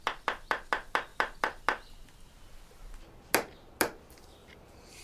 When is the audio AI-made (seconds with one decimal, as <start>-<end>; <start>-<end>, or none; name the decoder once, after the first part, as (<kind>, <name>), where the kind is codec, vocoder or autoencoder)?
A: 4.4-5.0 (vocoder, BigVGAN v2)

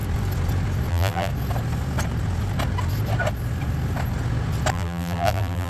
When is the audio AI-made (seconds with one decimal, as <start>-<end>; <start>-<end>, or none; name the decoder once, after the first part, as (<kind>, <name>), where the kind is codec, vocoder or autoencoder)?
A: 0.9-1.3 (vocoder, BigVGAN v2); 4.7-5.7

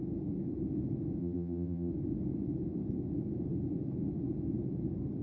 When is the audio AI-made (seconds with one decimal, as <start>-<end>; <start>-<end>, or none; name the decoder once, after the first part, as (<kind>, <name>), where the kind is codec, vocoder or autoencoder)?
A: 1.2-1.9 (vocoder, BigVGAN v2)

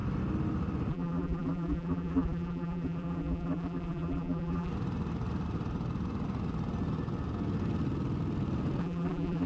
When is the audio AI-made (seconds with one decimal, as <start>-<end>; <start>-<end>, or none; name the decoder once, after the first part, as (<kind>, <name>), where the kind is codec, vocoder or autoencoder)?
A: 0.9-4.7 (vocoder, BigVGAN v2); 8.8-9.5

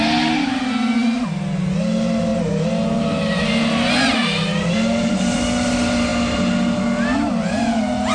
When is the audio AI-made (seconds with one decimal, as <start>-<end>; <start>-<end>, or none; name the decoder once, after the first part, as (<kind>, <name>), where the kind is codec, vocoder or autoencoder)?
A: none

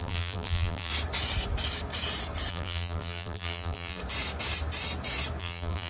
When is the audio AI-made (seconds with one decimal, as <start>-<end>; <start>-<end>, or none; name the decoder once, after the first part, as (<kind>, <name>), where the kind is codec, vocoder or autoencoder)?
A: 0.0-0.9 (vocoder, BigVGAN v2); 2.5-4.0; 5.4-5.9

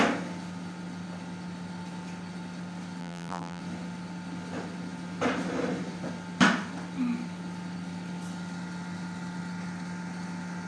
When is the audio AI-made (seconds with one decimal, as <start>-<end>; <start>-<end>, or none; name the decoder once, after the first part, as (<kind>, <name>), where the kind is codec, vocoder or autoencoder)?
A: 3.0-3.6 (vocoder, BigVGAN v2)